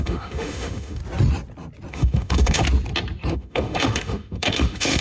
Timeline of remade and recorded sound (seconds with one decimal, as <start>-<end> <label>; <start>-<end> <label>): 0.0-1.0 remade; 1.0-1.9 recorded; 1.9-2.6 remade; 2.6-3.3 recorded; 3.3-5.0 remade